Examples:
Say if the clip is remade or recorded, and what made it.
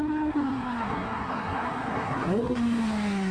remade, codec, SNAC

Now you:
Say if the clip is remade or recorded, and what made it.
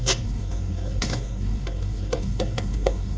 remade, codec, SNAC